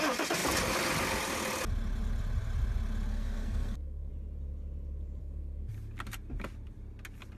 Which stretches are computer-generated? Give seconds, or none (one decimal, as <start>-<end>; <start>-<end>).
3.1-4.1; 5.2-5.7